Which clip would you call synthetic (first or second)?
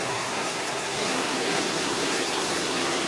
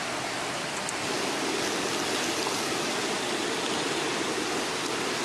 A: first